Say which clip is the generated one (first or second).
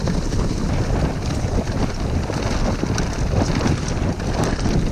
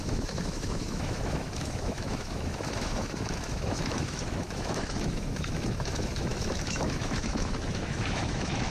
second